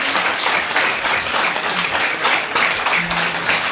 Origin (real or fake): fake